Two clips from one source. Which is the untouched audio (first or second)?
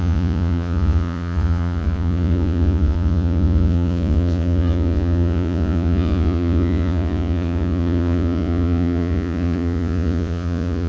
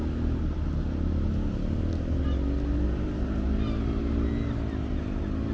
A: second